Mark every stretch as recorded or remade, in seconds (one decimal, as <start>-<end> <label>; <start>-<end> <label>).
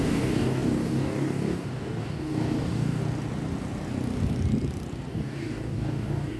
0.0-3.0 remade; 3.0-5.1 recorded; 5.1-6.4 remade